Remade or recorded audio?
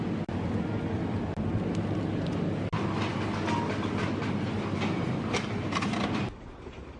recorded